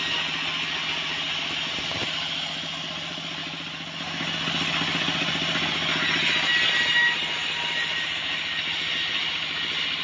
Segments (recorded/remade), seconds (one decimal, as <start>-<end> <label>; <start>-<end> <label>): 0.0-10.0 recorded